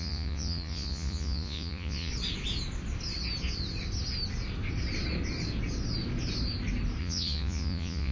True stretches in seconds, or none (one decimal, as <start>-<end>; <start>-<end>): 2.1-7.0